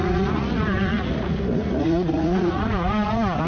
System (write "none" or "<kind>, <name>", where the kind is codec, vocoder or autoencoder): vocoder, Vocos